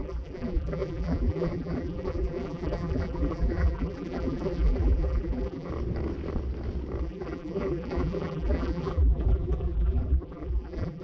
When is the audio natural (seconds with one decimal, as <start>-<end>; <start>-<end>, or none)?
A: 5.7-7.0

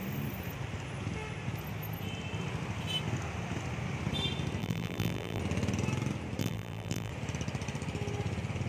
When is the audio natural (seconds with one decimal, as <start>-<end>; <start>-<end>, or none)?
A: 0.0-4.6; 5.4-6.4; 7.1-8.7

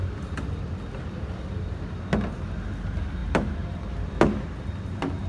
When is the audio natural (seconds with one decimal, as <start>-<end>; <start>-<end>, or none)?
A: 0.0-3.2; 3.9-5.3

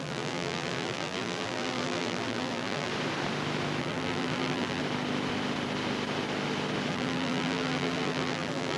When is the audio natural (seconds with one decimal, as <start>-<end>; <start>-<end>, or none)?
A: 2.9-3.8; 4.8-6.9

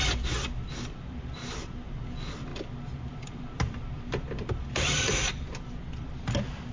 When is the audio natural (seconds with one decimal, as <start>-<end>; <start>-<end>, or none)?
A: 2.5-3.1